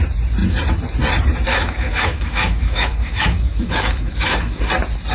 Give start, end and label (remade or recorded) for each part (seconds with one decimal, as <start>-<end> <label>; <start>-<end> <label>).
0.0-1.5 recorded; 1.5-4.6 remade; 4.6-5.1 recorded

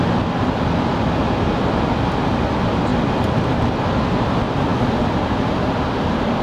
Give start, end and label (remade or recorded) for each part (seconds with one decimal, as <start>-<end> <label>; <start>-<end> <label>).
0.0-6.4 recorded

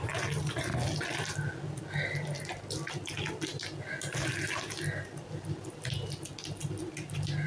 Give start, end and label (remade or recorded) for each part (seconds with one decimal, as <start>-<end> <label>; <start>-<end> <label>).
0.0-7.5 recorded

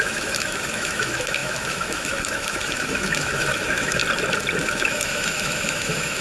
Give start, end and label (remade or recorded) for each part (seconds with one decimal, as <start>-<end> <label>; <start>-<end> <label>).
0.0-4.0 remade; 4.0-4.6 recorded; 4.6-6.2 remade

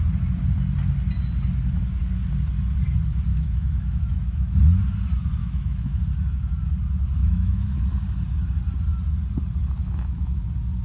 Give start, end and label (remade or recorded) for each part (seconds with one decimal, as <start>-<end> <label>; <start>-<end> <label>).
0.0-3.3 recorded; 3.3-4.8 remade; 4.8-5.4 recorded; 5.4-6.0 remade; 6.0-7.2 recorded; 7.2-7.8 remade; 7.8-9.8 recorded; 9.8-10.4 remade; 10.4-10.8 recorded

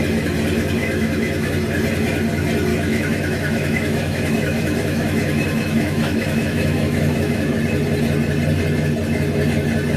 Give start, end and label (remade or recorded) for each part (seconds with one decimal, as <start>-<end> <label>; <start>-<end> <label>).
0.0-0.8 recorded; 0.8-1.5 remade; 1.5-2.7 recorded; 2.7-7.6 remade; 7.6-10.0 recorded

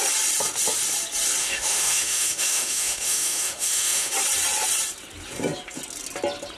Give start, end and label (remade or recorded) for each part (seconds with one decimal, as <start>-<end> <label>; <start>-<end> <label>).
0.0-1.4 recorded; 1.4-4.1 remade; 4.1-6.6 recorded

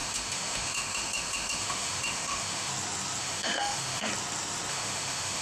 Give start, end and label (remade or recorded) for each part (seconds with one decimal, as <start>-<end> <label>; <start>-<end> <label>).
0.0-2.7 remade; 2.7-3.2 recorded; 3.2-4.1 remade; 4.1-4.7 recorded; 4.7-5.4 remade